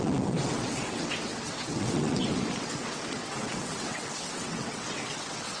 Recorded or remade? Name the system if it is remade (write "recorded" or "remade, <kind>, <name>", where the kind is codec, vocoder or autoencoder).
remade, vocoder, WaveNeXt